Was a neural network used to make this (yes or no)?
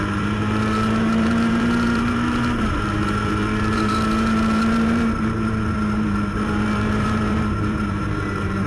yes